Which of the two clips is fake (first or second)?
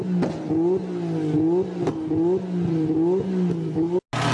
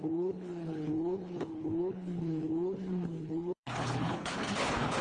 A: second